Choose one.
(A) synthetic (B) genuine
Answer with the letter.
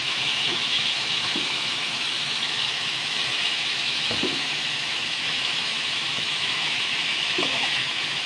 A